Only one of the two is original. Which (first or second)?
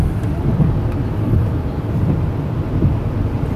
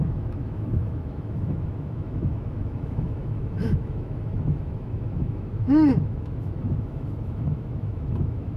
first